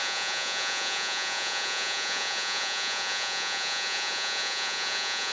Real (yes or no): no